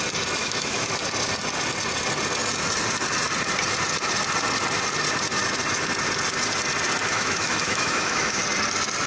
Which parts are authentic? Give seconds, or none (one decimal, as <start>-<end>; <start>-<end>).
0.0-0.4; 0.9-7.1; 8.4-9.1